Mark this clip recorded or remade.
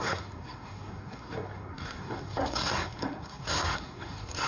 remade